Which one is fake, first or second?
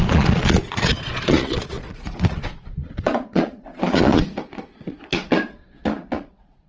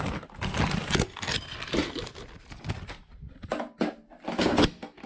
first